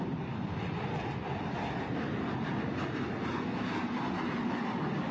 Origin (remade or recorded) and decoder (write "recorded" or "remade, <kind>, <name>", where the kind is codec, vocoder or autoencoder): recorded